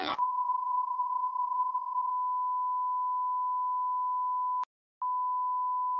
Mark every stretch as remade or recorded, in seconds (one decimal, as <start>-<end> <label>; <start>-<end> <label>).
0.0-2.1 remade; 2.1-6.0 recorded